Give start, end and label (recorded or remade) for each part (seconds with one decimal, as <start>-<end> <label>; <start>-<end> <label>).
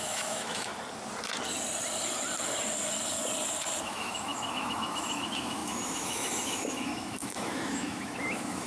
0.0-0.7 remade; 0.7-3.8 recorded; 3.8-8.7 remade